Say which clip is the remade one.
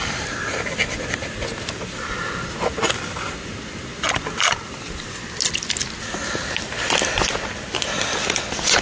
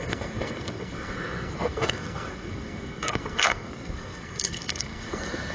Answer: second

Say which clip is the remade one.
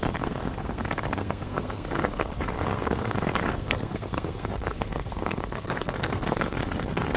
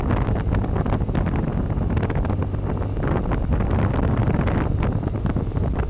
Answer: first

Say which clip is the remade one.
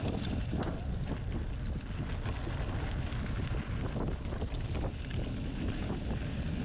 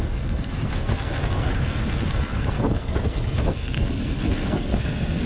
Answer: second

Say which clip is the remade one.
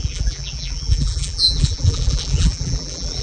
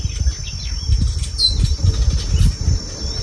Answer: first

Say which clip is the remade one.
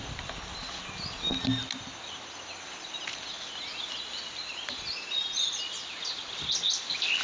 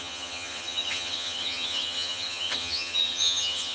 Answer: second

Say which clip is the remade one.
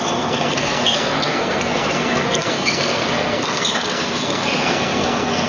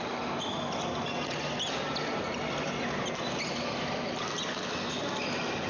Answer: first